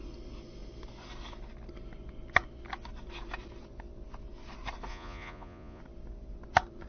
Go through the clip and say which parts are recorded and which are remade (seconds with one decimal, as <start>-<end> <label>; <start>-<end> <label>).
0.0-4.9 recorded; 4.9-5.8 remade; 5.8-6.9 recorded